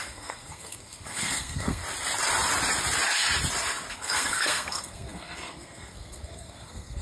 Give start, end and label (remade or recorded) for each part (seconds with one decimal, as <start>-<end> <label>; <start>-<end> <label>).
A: 0.0-1.8 remade; 1.8-3.9 recorded; 3.9-7.0 remade